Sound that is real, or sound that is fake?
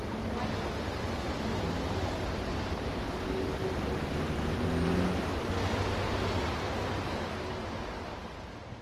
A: real